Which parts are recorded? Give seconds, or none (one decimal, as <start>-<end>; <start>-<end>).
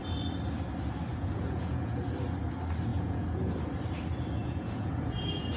0.0-1.1; 2.0-2.9; 3.5-4.4